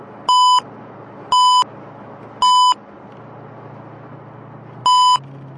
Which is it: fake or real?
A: real